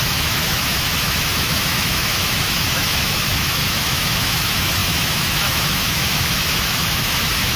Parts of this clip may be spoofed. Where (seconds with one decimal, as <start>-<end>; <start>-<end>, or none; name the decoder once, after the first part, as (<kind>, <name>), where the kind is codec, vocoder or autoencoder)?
0.0-7.6 (autoencoder, DAC-VAE)

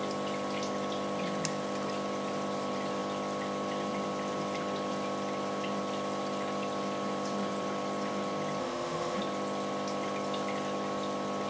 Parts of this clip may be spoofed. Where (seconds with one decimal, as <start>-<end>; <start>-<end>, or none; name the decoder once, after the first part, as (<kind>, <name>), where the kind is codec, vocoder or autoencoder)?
8.6-9.2 (autoencoder, DAC-VAE)

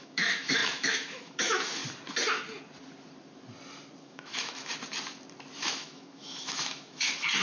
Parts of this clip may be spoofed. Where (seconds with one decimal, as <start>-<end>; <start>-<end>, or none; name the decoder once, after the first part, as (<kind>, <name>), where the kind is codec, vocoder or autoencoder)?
0.0-1.8 (autoencoder, DAC-VAE); 4.0-4.7; 5.6-7.4

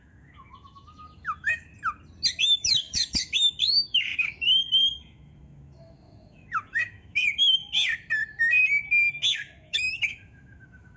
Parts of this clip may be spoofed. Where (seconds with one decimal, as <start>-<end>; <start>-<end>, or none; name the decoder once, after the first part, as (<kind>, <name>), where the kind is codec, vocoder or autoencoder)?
0.0-1.7 (autoencoder, DAC-VAE); 2.4-7.6; 9.2-11.0

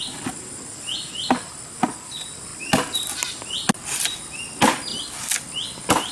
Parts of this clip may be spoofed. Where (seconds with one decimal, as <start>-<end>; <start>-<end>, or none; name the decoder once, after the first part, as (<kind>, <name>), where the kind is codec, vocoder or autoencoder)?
none

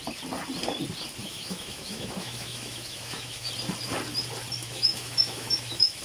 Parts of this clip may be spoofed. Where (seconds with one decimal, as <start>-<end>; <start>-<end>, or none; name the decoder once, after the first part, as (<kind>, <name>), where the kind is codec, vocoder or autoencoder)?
1.2-3.5 (autoencoder, DAC-VAE); 4.6-6.0